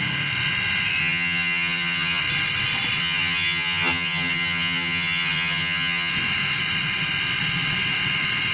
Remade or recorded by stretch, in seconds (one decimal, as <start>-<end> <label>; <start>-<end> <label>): 0.0-1.0 recorded; 1.0-2.2 remade; 2.2-3.0 recorded; 3.0-6.1 remade; 6.1-8.5 recorded